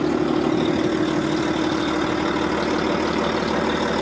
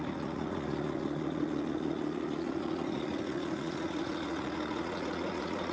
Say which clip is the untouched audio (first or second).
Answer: first